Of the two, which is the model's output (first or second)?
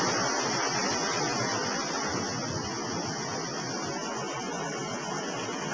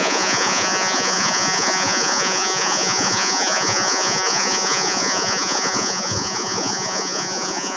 second